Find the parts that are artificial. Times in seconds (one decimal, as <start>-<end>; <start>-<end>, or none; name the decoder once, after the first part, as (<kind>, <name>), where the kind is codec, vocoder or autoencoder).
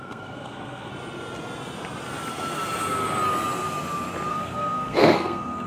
0.0-0.9 (codec, SNAC); 4.3-5.7